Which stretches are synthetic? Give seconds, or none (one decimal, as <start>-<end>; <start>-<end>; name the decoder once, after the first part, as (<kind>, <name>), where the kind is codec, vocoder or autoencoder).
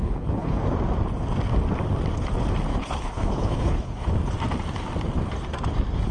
0.0-0.6 (codec, HILCodec); 2.7-4.1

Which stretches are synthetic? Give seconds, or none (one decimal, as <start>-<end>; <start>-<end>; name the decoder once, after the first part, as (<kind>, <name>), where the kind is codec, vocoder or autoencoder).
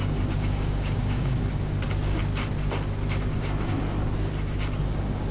0.0-2.3 (codec, DAC); 4.8-5.3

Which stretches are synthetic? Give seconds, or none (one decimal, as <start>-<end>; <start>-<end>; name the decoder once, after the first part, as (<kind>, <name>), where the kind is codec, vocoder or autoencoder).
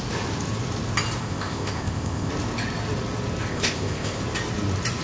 1.2-2.3 (codec, ZipCodec); 3.5-4.2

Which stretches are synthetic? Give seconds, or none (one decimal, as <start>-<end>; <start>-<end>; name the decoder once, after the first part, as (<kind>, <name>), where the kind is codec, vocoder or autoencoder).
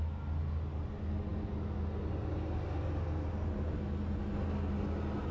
none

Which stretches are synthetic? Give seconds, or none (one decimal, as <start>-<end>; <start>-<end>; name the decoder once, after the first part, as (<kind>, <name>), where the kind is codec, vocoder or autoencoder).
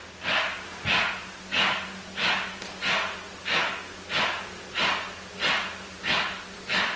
none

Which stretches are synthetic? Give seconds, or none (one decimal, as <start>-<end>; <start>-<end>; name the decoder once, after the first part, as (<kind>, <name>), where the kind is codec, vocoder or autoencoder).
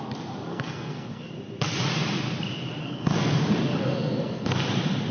0.5-1.3 (codec, SNAC); 2.8-3.4; 3.8-4.5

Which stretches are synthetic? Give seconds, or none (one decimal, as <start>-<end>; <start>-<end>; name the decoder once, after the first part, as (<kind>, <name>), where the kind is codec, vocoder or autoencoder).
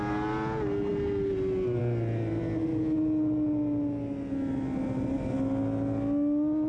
none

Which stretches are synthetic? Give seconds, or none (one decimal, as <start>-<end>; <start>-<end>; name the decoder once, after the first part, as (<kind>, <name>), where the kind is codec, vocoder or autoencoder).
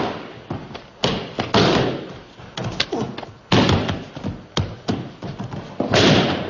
none